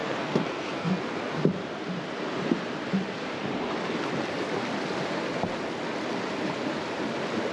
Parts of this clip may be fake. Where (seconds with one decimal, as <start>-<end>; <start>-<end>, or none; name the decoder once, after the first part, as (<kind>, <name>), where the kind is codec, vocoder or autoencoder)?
0.0-1.0 (codec, SNAC)